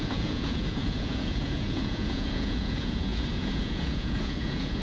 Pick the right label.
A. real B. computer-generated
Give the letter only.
B